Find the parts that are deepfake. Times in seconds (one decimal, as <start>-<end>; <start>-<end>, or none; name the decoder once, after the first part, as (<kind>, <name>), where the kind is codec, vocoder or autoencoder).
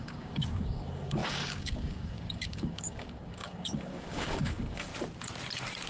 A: 0.0-4.9 (codec, DAC)